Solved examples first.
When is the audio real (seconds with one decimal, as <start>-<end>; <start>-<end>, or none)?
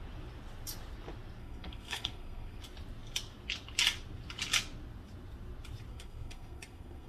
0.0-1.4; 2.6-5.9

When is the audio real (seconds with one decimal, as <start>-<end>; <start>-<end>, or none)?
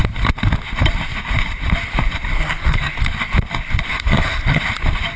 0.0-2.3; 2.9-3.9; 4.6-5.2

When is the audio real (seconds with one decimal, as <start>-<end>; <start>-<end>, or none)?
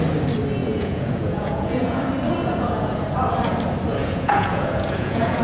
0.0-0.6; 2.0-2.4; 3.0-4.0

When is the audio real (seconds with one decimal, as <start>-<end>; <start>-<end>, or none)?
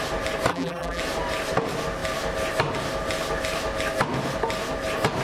0.0-0.5; 1.0-5.2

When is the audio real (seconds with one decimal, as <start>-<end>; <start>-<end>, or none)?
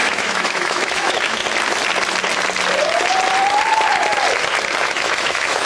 1.4-4.8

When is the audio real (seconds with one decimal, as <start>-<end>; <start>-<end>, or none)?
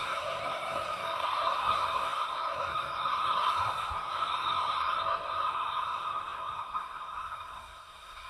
none